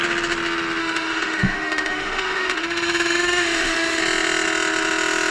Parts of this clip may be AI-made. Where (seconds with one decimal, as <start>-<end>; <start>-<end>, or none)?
0.8-4.0